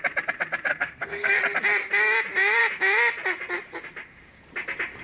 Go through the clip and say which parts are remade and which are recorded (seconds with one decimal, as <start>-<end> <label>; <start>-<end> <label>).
0.0-0.7 recorded; 0.7-1.4 remade; 1.4-5.0 recorded